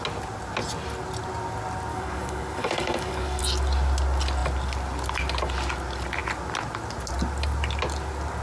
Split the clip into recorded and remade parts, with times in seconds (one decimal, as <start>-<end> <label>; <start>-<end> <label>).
0.0-1.9 recorded; 1.9-3.4 remade; 3.4-8.4 recorded